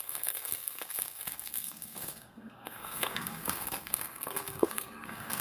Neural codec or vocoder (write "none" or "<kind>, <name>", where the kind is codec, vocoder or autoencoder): codec, SNAC